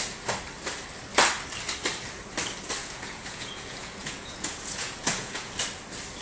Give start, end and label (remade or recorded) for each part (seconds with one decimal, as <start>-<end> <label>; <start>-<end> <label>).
0.0-2.8 recorded; 2.8-5.5 remade; 5.5-6.2 recorded